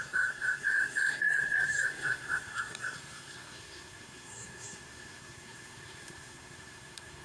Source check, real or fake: fake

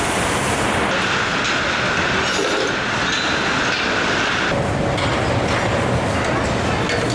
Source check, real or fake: real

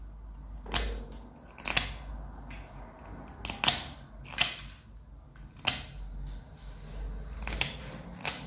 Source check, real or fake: real